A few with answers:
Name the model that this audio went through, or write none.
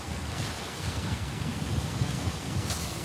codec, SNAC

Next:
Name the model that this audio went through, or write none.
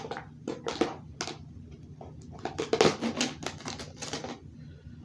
none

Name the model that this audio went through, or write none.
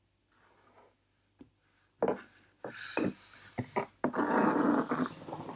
none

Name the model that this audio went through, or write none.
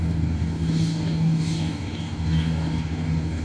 codec, DAC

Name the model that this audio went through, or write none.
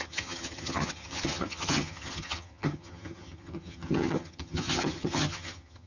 vocoder, HiFi-GAN